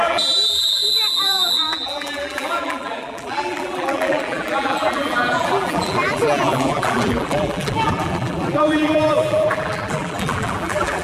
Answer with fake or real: fake